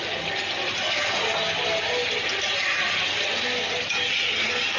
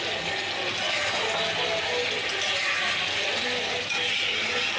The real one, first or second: second